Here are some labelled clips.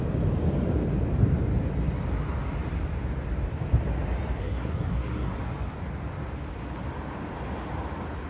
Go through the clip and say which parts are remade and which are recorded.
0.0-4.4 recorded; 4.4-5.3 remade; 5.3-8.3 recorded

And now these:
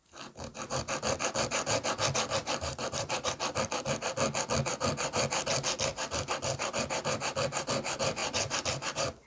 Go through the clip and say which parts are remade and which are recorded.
0.0-0.9 remade; 0.9-2.4 recorded; 2.4-3.4 remade; 3.4-9.3 recorded

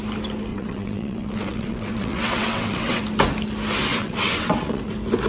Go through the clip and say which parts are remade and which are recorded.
0.0-0.5 recorded; 0.5-3.0 remade; 3.0-3.9 recorded; 3.9-4.8 remade; 4.8-5.3 recorded

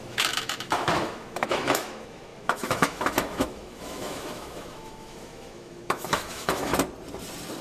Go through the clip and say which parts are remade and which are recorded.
0.0-6.7 remade; 6.7-7.6 recorded

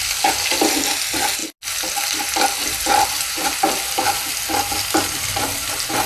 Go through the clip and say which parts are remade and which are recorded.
0.0-6.1 recorded

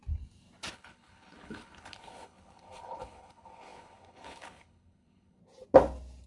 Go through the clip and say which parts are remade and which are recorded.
0.0-0.7 recorded; 0.7-5.4 remade; 5.4-6.3 recorded

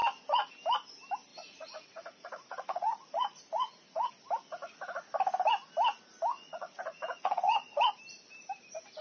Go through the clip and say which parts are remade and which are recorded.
0.0-0.5 remade; 0.5-1.3 recorded; 1.3-4.1 remade; 4.1-6.3 recorded; 6.3-7.9 remade; 7.9-9.0 recorded